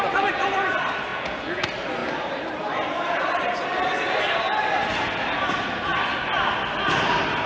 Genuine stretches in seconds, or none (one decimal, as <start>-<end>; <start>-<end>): 0.0-1.1; 1.6-7.5